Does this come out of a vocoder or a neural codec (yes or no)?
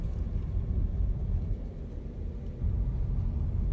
no